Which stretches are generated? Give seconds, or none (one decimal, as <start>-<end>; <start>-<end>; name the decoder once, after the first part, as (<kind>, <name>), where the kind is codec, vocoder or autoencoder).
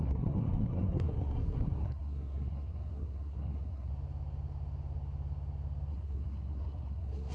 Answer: 0.0-3.9 (codec, SNAC); 5.9-7.3